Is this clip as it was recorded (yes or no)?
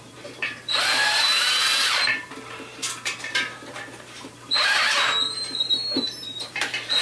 no